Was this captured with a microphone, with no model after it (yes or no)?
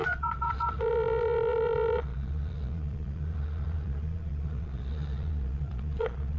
no